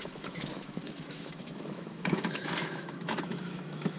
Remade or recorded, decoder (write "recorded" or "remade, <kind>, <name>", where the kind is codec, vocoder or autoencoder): remade, autoencoder, DAC-VAE